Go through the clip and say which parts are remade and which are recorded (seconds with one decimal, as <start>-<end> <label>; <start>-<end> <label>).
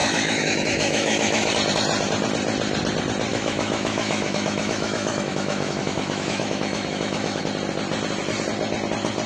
0.0-1.5 remade; 1.5-3.3 recorded; 3.3-7.4 remade; 7.4-9.3 recorded